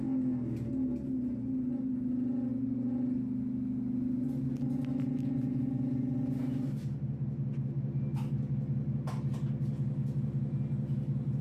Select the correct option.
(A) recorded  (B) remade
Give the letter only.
A